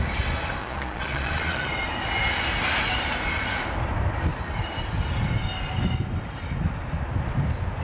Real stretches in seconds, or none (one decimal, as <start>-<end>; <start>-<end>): 0.0-0.6; 1.7-7.8